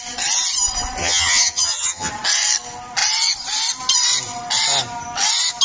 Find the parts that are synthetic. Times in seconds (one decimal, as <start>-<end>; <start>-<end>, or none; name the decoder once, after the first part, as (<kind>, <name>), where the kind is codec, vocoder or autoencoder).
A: 1.0-2.1 (vocoder, HiFi-GAN)